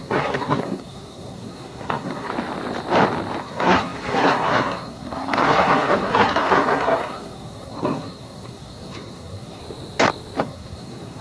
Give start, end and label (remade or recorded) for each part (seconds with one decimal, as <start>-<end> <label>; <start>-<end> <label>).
0.0-2.3 remade; 2.3-3.4 recorded; 3.4-9.6 remade; 9.6-10.4 recorded; 10.4-11.2 remade